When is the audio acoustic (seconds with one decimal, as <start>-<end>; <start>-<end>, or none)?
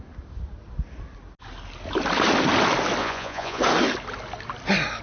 0.0-3.0; 3.6-5.0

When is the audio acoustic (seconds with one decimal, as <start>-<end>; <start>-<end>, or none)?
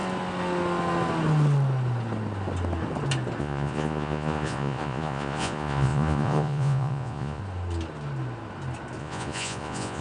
0.0-3.4; 7.4-9.0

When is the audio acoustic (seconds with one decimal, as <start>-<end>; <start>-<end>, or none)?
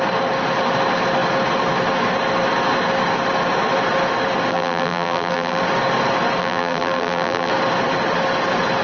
0.0-4.5; 5.6-6.4; 7.5-8.8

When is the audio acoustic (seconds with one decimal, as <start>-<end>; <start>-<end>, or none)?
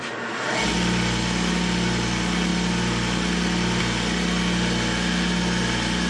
0.0-6.1